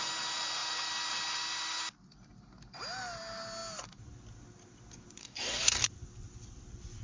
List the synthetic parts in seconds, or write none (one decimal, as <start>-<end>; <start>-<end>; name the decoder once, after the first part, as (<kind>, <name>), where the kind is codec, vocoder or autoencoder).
5.2-5.8 (codec, DAC)